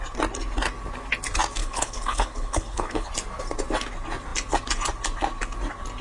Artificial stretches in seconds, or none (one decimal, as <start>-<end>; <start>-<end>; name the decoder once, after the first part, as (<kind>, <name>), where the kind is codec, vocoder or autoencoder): 1.6-3.1 (codec, HILCodec)